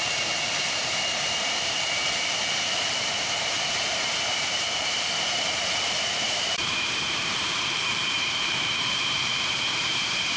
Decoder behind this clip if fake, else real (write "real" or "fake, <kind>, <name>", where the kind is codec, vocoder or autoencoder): fake, vocoder, BigVGAN v2